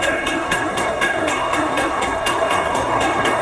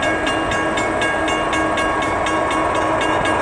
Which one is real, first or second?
second